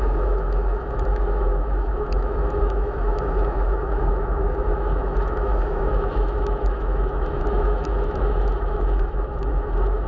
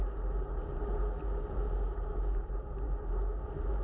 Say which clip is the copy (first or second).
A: first